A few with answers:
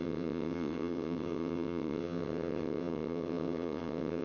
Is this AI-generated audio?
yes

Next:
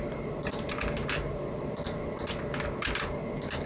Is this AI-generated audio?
no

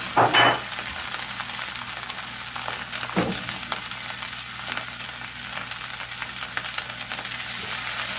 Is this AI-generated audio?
no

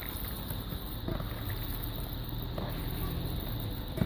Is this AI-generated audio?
no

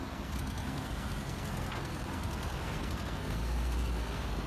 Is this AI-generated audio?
yes